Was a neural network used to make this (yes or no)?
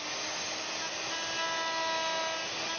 no